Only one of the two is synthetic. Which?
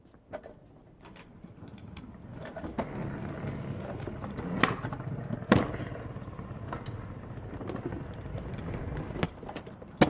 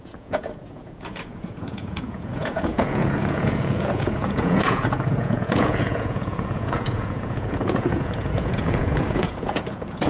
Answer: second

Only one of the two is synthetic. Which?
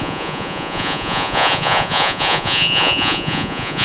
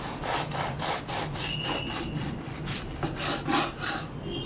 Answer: first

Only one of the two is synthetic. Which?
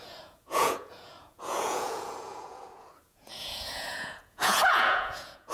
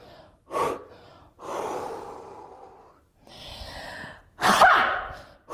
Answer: first